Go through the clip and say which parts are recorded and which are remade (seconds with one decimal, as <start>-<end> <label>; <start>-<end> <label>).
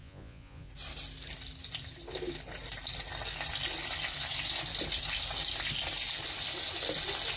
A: 0.0-0.7 remade; 0.7-7.4 recorded